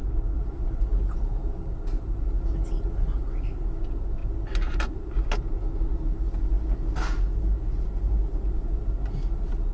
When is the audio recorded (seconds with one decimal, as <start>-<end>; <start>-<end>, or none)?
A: 1.0-9.7